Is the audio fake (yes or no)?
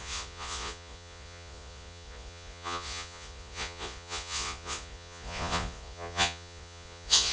yes